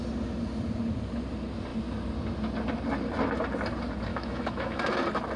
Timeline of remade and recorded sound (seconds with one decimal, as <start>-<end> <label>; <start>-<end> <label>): 0.0-4.1 recorded; 4.1-4.8 remade; 4.8-5.4 recorded